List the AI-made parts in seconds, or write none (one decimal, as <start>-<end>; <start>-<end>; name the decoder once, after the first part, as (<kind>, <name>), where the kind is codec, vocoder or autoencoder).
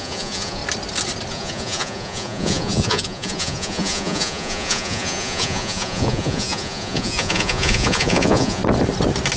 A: 0.0-0.6 (vocoder, Vocos); 1.3-8.6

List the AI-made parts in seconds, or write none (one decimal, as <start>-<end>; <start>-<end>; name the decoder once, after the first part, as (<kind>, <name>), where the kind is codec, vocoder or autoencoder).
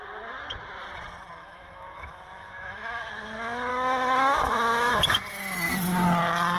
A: 1.4-3.1 (autoencoder, DAC-VAE); 3.7-4.9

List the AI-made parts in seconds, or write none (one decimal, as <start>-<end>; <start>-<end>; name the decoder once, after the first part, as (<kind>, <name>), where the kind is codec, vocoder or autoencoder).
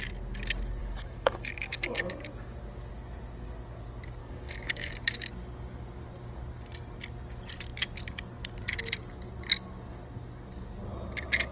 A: 0.8-2.1 (codec, DAC); 4.2-4.9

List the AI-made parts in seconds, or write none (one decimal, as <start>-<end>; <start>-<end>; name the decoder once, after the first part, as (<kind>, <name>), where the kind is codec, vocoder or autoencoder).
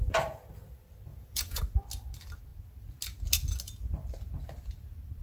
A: 1.1-1.6 (vocoder, Vocos)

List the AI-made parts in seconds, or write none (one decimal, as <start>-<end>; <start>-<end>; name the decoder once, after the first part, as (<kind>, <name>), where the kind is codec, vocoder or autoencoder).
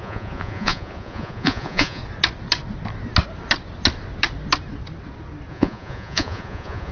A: 0.0-2.0 (vocoder, Vocos); 5.5-6.9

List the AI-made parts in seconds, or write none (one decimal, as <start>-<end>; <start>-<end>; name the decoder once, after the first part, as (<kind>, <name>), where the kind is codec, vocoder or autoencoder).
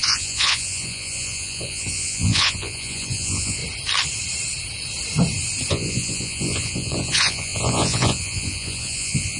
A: 0.0-3.6 (vocoder, Vocos); 5.7-9.4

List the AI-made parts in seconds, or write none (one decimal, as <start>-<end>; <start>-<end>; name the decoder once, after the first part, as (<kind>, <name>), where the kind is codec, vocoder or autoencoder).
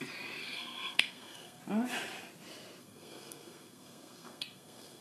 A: 0.4-1.6 (codec, SNAC); 2.8-5.0